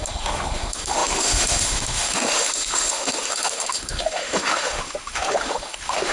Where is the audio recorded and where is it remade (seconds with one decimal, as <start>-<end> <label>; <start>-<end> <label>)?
0.0-6.1 remade